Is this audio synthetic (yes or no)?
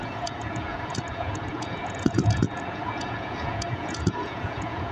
yes